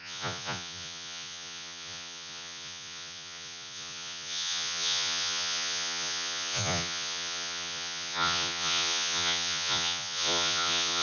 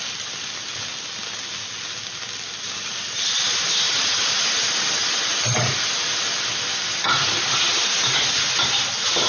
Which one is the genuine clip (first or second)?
second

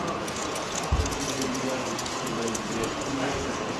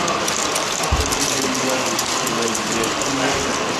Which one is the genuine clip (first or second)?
second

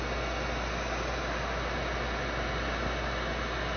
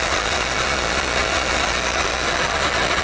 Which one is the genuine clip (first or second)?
first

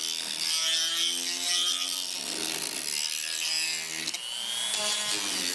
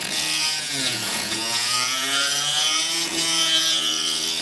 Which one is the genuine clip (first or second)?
first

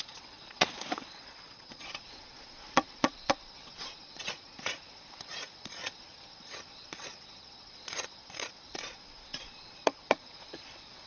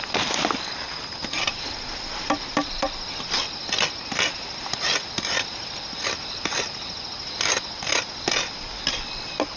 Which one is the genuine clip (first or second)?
second